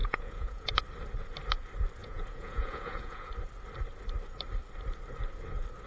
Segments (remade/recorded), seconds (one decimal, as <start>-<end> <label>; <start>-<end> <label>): 0.0-0.7 remade; 0.7-2.0 recorded; 2.0-3.3 remade; 3.3-5.9 recorded

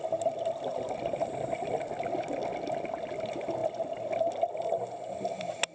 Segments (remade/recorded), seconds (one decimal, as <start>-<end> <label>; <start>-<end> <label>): 0.0-5.7 recorded